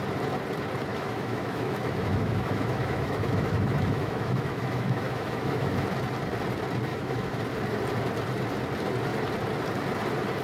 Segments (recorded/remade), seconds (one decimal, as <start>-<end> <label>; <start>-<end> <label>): 0.0-0.9 recorded; 0.9-5.9 remade; 5.9-6.9 recorded; 6.9-7.4 remade; 7.4-10.4 recorded